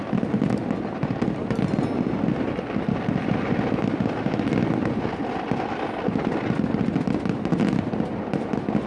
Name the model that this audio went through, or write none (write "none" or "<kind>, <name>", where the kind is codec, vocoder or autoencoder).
none